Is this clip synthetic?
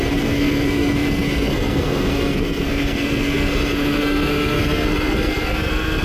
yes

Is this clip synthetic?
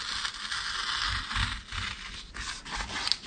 no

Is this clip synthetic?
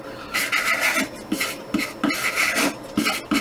no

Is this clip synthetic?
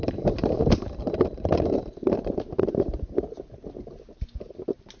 no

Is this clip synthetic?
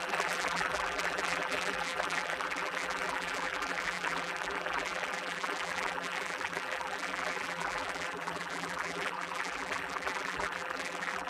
yes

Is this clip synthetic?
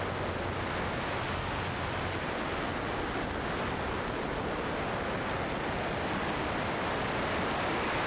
no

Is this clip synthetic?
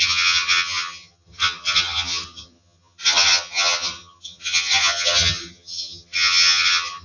yes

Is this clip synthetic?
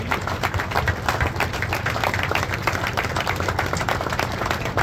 yes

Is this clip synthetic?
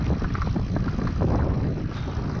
no